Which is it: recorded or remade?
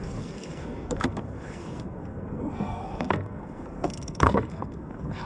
remade